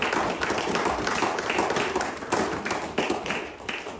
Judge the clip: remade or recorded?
recorded